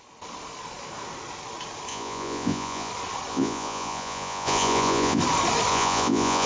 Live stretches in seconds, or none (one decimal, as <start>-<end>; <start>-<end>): 0.0-1.9; 2.9-3.3; 5.2-5.7